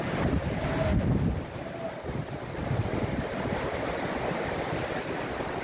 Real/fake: real